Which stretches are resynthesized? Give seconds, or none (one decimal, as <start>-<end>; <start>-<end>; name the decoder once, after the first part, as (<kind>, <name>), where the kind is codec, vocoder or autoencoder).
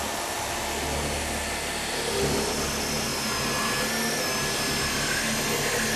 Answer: none